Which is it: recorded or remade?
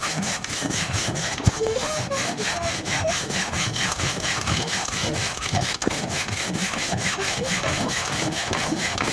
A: remade